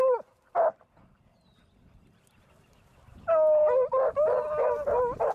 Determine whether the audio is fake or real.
real